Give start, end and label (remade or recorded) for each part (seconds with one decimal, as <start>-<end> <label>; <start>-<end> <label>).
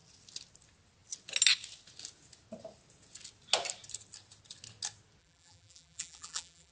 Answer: 0.0-5.2 recorded; 5.2-6.7 remade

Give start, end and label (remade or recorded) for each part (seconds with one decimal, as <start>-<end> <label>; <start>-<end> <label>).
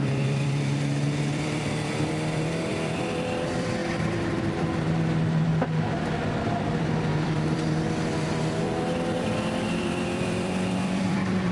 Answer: 0.0-5.5 remade; 5.5-6.4 recorded; 6.4-11.5 remade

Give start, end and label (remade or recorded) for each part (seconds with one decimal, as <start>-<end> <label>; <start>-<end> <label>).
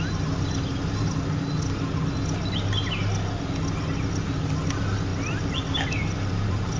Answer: 0.0-5.1 recorded; 5.1-6.8 remade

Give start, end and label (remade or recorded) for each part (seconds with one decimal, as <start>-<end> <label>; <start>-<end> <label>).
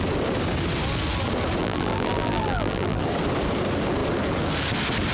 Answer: 0.0-1.6 recorded; 1.6-3.0 remade; 3.0-5.1 recorded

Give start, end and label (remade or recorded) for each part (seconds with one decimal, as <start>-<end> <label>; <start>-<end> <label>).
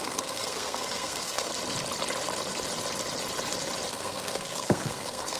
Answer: 0.0-1.5 remade; 1.5-3.9 recorded; 3.9-5.4 remade